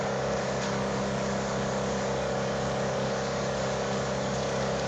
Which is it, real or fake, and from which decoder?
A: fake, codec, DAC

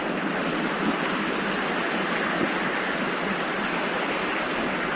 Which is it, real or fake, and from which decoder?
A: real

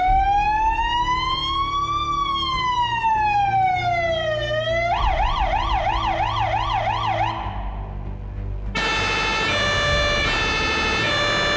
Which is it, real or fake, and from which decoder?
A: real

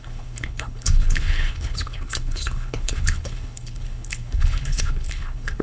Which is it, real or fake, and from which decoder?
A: fake, codec, HILCodec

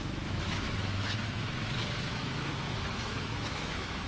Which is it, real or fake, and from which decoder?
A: fake, autoencoder, DAC-VAE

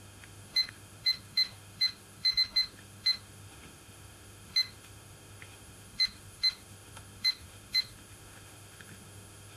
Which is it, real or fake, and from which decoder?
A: fake, autoencoder, DAC-VAE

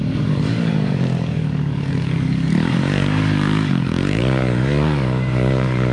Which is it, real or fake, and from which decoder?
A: fake, codec, DAC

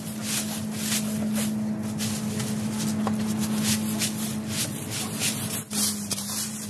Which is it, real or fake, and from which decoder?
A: real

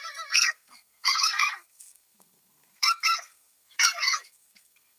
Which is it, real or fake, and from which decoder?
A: fake, codec, SNAC